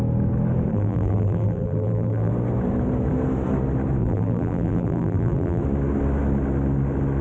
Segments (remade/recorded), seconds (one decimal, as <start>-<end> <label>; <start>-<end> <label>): 0.0-0.7 recorded; 0.7-2.3 remade; 2.3-4.0 recorded; 4.0-5.6 remade; 5.6-7.2 recorded